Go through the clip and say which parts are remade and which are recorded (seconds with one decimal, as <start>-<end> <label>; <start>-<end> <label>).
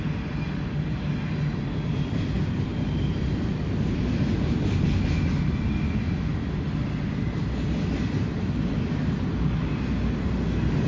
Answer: 0.0-10.9 recorded